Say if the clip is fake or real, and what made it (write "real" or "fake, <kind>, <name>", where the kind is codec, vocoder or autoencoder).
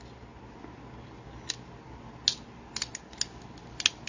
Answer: real